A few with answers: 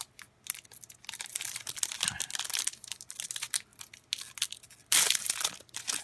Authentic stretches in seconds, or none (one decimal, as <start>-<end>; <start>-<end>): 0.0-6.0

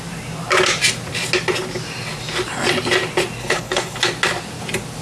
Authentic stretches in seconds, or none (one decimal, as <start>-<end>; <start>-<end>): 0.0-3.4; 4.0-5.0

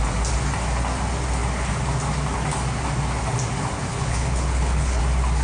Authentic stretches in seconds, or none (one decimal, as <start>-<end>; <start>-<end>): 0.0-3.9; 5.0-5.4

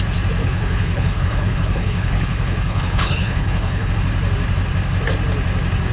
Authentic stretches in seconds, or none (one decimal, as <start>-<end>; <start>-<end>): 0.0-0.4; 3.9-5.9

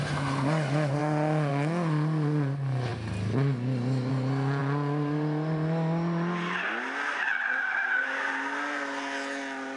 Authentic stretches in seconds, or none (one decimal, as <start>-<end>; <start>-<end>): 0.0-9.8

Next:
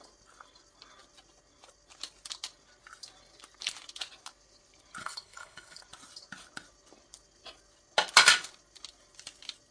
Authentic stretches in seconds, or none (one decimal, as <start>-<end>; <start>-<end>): 0.0-5.0; 5.8-9.7